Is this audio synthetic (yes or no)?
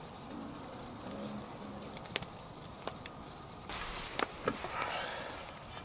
no